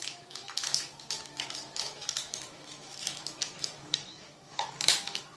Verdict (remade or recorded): remade